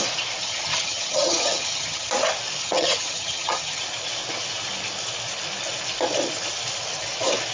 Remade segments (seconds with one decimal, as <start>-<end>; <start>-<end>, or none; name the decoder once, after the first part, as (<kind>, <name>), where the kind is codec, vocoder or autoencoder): 0.4-2.1 (vocoder, HiFi-GAN); 2.6-3.8